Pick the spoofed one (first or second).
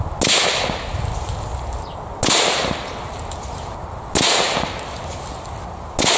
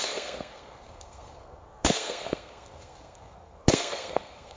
second